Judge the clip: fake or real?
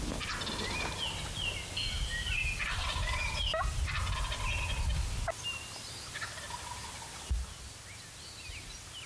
real